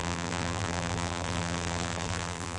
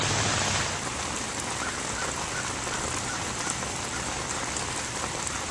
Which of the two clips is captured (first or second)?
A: second